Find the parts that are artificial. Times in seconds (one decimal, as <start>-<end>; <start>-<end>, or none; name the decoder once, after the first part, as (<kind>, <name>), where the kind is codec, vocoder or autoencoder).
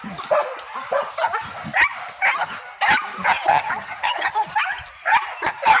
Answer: 3.5-4.3 (vocoder, HiFi-GAN)